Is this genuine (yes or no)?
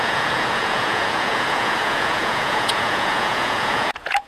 no